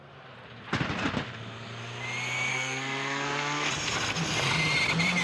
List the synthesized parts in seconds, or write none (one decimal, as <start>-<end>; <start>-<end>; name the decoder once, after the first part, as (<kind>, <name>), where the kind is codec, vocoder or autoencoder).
2.5-3.7 (codec, SNAC)